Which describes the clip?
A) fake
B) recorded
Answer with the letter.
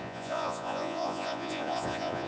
A